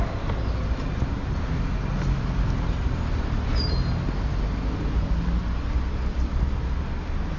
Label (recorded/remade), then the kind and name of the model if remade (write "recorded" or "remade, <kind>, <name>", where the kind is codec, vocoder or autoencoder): recorded